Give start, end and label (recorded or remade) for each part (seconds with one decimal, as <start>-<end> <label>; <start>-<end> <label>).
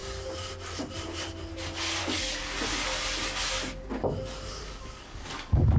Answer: 0.0-2.0 recorded; 2.0-2.4 remade; 2.4-4.6 recorded; 4.6-5.8 remade